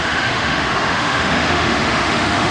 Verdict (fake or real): fake